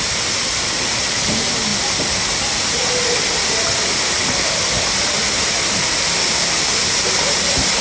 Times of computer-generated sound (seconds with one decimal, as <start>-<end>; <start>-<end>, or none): none